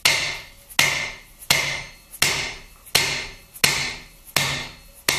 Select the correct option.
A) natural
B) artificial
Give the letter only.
A